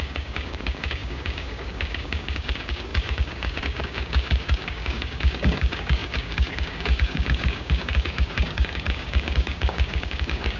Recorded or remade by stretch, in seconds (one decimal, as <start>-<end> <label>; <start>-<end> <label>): 0.0-10.6 remade